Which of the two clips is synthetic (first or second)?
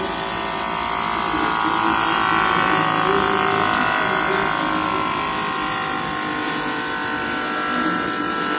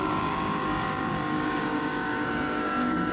second